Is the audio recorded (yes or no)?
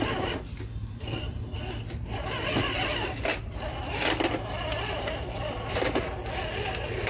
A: yes